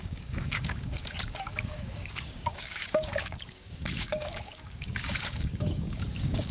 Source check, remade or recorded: remade